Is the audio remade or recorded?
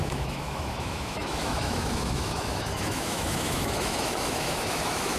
remade